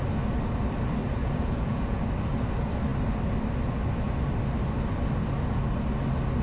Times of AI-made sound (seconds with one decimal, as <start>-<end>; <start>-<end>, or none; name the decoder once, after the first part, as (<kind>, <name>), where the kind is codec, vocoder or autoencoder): 1.2-2.0 (vocoder, Vocos)